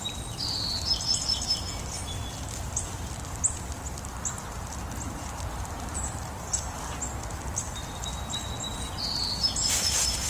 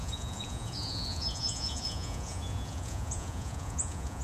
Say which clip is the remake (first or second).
second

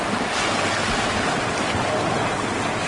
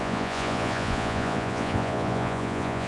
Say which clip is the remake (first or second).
second